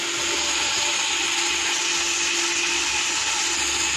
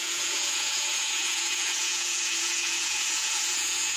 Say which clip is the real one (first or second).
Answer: first